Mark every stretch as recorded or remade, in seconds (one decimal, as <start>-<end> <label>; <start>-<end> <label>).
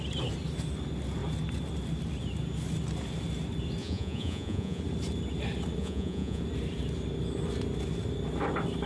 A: 0.0-3.8 recorded; 3.8-4.8 remade; 4.8-5.8 recorded; 5.8-6.4 remade; 6.4-8.9 recorded